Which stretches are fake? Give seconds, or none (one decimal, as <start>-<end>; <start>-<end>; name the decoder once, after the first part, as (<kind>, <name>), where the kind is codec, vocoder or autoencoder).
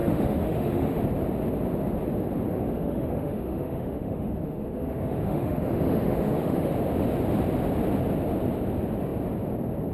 0.0-1.0 (autoencoder, DAC-VAE); 2.5-6.7